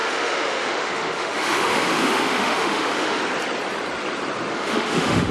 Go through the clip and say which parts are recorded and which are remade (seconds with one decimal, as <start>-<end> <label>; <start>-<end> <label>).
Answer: 0.0-3.2 remade; 3.2-4.5 recorded; 4.5-5.3 remade

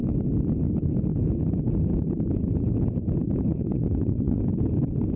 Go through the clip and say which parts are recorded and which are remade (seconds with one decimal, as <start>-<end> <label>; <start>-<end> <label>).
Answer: 0.0-3.5 recorded; 3.5-4.4 remade; 4.4-5.2 recorded

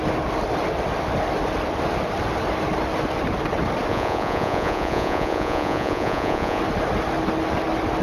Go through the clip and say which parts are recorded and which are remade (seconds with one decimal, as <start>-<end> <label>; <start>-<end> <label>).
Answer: 0.0-3.9 recorded; 3.9-6.6 remade; 6.6-8.0 recorded

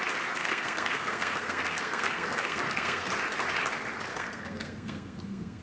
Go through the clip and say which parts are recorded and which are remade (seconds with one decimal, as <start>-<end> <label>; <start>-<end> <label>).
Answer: 0.0-0.4 recorded; 0.4-3.1 remade; 3.1-4.1 recorded; 4.1-5.6 remade

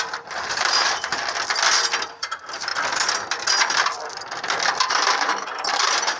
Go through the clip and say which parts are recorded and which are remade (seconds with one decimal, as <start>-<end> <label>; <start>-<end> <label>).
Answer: 0.0-1.1 remade; 1.1-2.2 recorded; 2.2-2.7 remade; 2.7-4.9 recorded; 4.9-6.2 remade

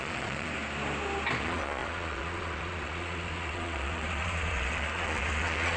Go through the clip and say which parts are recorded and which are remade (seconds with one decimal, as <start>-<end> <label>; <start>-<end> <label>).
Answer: 0.0-0.5 remade; 0.5-1.4 recorded; 1.4-5.8 remade

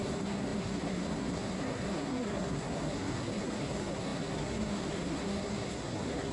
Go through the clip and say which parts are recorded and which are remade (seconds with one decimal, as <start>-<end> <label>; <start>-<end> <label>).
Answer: 0.0-6.3 remade

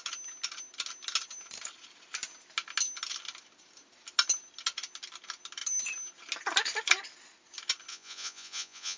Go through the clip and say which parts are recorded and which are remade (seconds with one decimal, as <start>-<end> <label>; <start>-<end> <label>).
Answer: 0.0-7.9 recorded; 7.9-9.0 remade